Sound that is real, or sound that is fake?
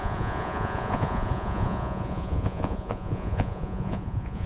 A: fake